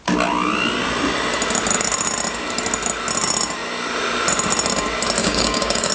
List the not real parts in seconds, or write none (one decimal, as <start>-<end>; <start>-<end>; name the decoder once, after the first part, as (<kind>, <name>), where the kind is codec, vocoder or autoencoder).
5.2-5.9 (codec, DAC)